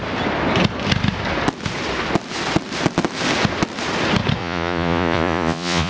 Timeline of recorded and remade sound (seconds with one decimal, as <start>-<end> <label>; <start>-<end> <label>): 0.0-4.4 recorded; 4.4-5.9 remade

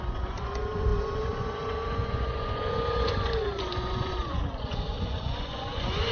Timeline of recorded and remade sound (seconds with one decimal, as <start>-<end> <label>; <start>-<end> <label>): 0.0-6.1 remade

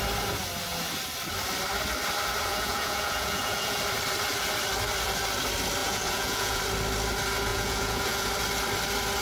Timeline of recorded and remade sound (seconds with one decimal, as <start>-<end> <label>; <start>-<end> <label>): 0.0-2.5 recorded; 2.5-3.8 remade; 3.8-5.8 recorded; 5.8-6.6 remade; 6.6-7.5 recorded; 7.5-8.3 remade; 8.3-9.2 recorded

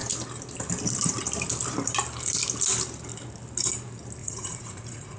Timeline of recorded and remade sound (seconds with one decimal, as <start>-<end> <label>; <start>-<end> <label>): 0.0-4.2 recorded; 4.2-5.2 remade

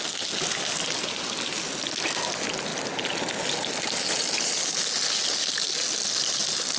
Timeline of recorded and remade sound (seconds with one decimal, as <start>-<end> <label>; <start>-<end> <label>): 0.0-6.8 recorded